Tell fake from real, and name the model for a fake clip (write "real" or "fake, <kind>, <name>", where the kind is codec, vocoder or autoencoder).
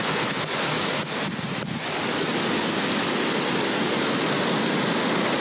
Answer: real